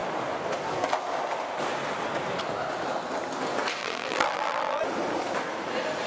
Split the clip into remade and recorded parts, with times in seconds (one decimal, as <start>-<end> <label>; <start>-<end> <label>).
0.0-3.8 recorded; 3.8-4.8 remade; 4.8-6.1 recorded